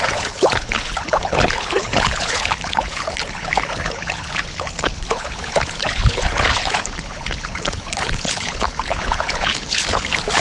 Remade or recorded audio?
remade